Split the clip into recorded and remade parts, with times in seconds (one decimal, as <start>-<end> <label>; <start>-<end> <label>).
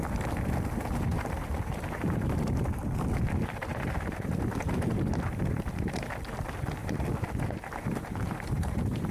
0.0-1.1 recorded; 1.1-2.8 remade; 2.8-3.7 recorded; 3.7-4.3 remade; 4.3-6.8 recorded; 6.8-9.1 remade